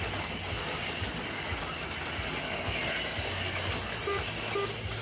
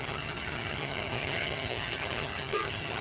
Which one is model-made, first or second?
second